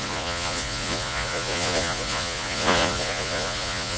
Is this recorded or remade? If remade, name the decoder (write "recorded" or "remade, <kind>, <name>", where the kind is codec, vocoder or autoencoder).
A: remade, vocoder, Vocos